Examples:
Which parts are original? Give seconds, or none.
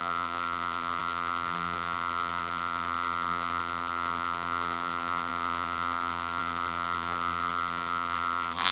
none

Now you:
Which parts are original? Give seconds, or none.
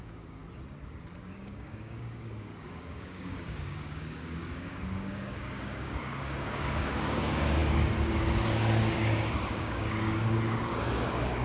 0.4-1.2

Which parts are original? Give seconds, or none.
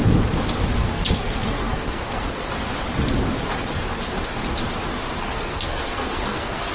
0.0-0.8; 2.5-5.2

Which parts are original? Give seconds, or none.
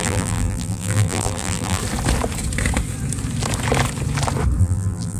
1.8-4.6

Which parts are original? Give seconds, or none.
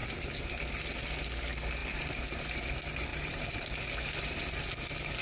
0.6-1.8; 2.4-3.1; 3.7-5.2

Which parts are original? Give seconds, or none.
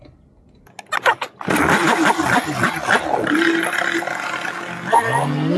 0.0-5.6